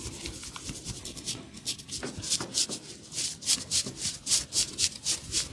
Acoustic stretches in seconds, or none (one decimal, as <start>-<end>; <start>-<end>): 0.0-1.0; 1.9-5.5